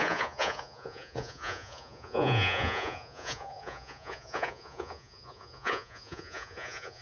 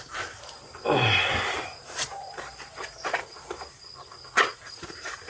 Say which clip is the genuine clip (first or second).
second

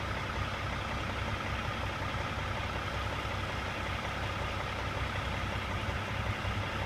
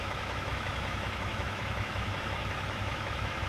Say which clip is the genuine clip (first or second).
first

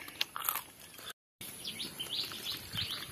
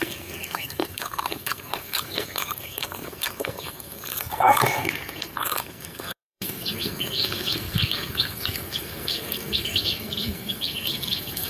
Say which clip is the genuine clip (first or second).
first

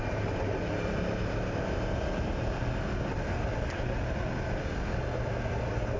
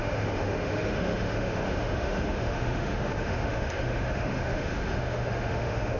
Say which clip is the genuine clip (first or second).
first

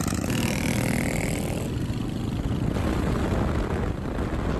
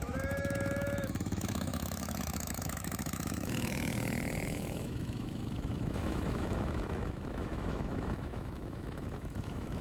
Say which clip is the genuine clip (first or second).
first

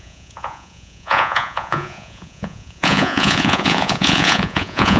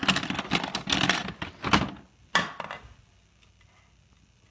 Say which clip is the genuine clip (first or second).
second